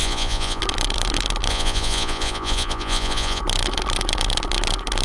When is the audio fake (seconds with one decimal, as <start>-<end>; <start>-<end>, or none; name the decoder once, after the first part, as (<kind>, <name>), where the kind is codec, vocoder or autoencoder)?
0.0-0.6 (vocoder, Vocos); 1.5-3.4

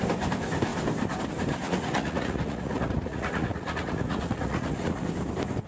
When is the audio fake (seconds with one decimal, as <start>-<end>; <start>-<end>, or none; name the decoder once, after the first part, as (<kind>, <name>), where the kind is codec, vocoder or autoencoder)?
1.6-5.0 (vocoder, Vocos)

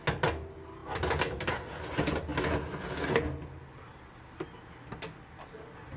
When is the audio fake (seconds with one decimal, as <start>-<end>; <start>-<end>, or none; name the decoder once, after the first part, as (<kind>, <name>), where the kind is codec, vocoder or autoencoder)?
none